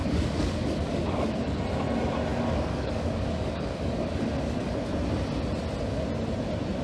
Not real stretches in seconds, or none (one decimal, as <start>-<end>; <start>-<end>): 0.0-1.6; 2.3-4.7